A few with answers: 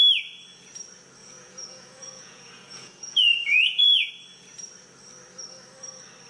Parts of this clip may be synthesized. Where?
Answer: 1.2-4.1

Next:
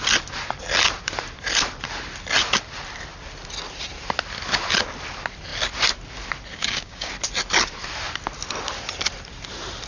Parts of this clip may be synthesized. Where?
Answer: 6.5-7.1

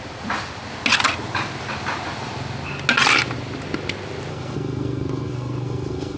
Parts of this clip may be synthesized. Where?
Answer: 4.3-6.2

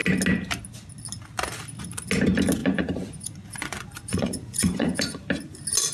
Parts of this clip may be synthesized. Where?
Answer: 2.6-5.2

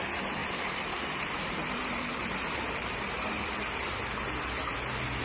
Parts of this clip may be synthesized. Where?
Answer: 0.4-3.5

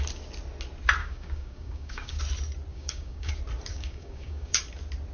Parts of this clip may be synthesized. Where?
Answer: 1.0-2.2; 2.7-3.3; 3.7-4.6

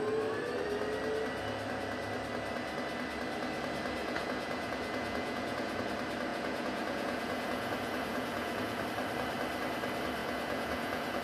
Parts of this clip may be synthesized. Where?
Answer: 4.0-5.8; 6.3-8.8; 10.2-11.2